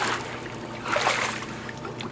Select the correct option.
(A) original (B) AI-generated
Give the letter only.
A